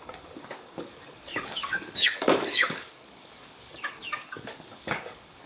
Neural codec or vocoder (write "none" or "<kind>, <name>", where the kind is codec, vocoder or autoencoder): codec, DAC